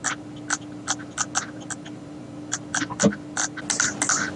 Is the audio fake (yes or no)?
no